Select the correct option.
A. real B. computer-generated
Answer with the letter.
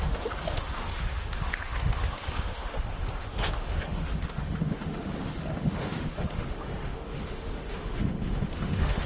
B